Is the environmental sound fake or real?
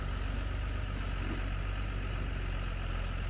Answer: real